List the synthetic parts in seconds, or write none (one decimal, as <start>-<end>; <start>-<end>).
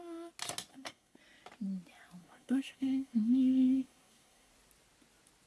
0.7-1.2; 2.2-4.5